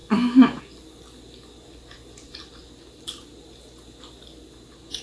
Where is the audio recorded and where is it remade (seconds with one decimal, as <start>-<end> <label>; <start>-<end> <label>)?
0.0-0.6 remade; 0.6-5.0 recorded